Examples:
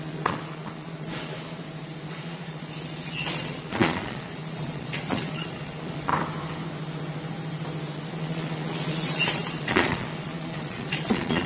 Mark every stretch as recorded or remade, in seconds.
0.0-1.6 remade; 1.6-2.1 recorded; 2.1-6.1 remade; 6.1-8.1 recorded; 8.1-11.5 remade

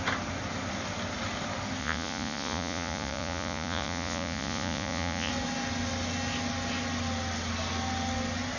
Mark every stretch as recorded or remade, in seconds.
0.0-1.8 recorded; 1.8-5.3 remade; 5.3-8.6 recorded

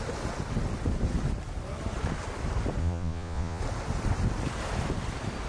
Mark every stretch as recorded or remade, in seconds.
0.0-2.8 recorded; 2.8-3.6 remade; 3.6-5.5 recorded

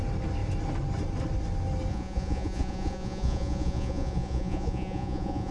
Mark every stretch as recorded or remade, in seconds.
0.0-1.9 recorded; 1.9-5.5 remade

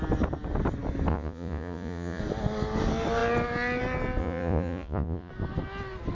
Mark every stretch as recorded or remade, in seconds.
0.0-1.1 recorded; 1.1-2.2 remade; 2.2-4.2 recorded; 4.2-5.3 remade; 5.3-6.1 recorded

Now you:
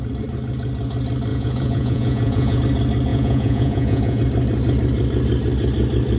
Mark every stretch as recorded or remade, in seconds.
0.0-1.3 recorded; 1.3-2.6 remade; 2.6-3.1 recorded; 3.1-4.2 remade; 4.2-6.2 recorded